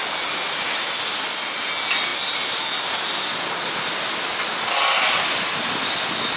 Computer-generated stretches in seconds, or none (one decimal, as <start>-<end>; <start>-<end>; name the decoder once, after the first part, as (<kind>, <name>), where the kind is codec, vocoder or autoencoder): none